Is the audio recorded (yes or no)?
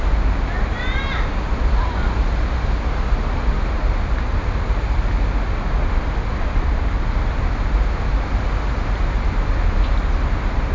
yes